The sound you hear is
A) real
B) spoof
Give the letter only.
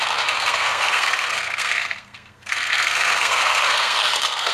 B